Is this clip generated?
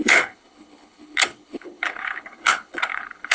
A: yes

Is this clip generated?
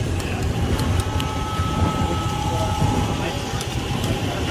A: no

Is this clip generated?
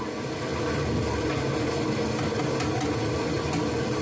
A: no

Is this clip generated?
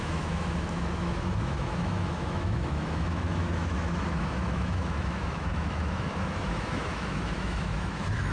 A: yes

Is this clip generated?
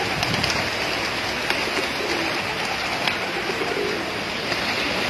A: no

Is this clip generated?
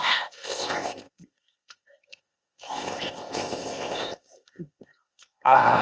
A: yes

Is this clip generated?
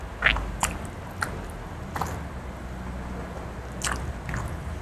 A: no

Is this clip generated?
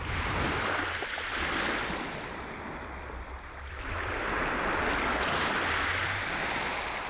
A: no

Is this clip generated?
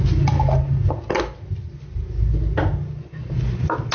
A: no